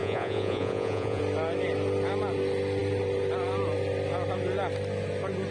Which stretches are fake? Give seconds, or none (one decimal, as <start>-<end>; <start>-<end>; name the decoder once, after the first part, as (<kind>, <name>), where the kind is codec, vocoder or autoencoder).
0.0-1.2 (vocoder, Vocos)